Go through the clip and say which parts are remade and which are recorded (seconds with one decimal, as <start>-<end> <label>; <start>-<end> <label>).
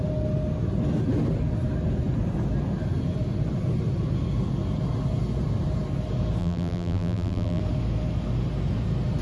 0.0-6.4 recorded; 6.4-7.6 remade; 7.6-9.2 recorded